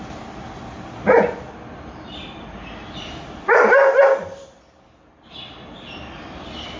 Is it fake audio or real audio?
real